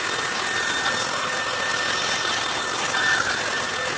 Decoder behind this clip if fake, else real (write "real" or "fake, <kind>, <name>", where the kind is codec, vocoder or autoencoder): real